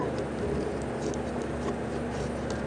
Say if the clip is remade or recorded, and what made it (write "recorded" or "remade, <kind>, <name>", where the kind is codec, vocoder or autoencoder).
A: recorded